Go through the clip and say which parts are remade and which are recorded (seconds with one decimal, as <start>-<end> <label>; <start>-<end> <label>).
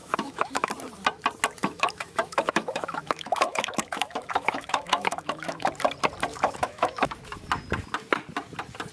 0.0-0.7 remade; 0.7-1.6 recorded; 1.6-5.7 remade; 5.7-6.3 recorded; 6.3-7.1 remade; 7.1-8.9 recorded